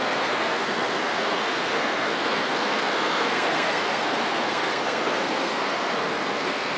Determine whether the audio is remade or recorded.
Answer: remade